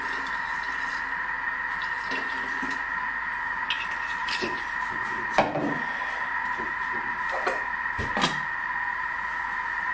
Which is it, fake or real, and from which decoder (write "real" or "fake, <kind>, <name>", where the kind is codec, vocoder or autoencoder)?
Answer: real